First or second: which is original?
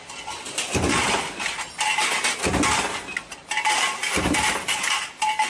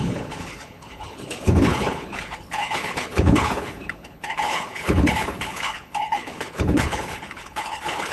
first